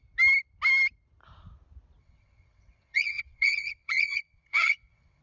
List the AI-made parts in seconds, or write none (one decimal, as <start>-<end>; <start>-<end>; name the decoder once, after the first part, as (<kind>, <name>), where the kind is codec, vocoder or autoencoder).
2.0-5.2 (vocoder, WaveNeXt)